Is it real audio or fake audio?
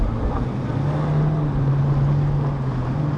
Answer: real